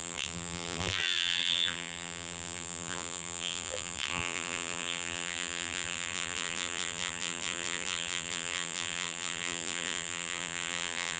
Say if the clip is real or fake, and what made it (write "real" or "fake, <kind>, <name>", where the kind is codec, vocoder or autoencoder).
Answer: fake, vocoder, BigVGAN v2